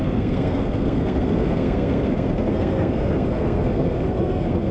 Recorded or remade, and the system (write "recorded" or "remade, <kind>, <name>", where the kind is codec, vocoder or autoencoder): remade, codec, SNAC